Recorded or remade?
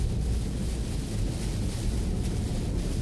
recorded